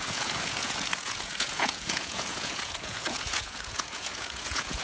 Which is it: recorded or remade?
remade